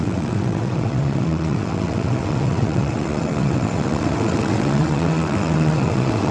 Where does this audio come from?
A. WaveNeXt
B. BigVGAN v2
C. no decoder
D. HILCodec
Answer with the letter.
A